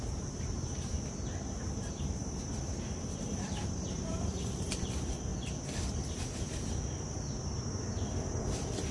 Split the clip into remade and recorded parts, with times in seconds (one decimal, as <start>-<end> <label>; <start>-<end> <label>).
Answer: 0.0-5.3 remade; 5.3-8.9 recorded